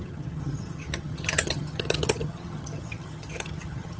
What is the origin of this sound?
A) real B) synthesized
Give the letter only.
B